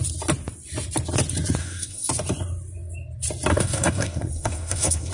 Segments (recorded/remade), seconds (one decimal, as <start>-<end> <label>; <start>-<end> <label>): 0.0-1.6 recorded; 1.6-2.1 remade; 2.1-3.5 recorded; 3.5-5.1 remade